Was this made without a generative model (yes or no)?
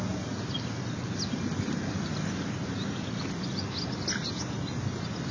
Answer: yes